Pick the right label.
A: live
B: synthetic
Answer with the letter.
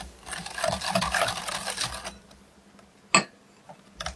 A